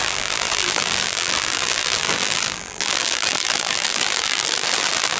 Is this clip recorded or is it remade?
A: remade